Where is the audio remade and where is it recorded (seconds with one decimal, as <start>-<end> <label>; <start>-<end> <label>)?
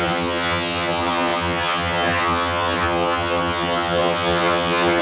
0.0-5.0 remade